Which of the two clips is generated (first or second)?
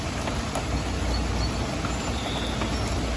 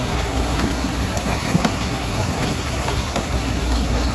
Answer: second